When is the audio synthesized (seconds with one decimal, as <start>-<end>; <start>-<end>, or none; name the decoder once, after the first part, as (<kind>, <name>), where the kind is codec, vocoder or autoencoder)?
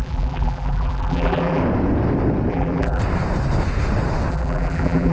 0.0-1.6 (vocoder, BigVGAN v2); 2.5-3.0; 4.3-5.1